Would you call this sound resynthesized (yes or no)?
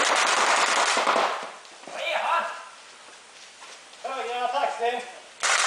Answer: no